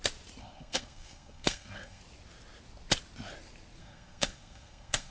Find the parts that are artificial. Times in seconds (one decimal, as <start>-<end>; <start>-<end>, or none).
0.4-2.0; 3.8-5.1